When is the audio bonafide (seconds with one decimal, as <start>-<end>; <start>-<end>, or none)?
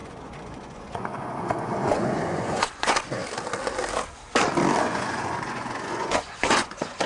3.2-4.8